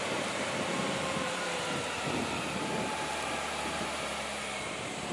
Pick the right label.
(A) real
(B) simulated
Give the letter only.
B